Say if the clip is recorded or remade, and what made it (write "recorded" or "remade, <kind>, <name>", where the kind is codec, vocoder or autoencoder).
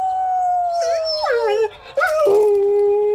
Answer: recorded